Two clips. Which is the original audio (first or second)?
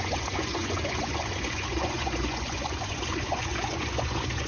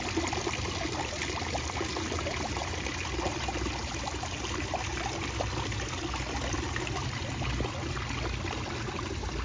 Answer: second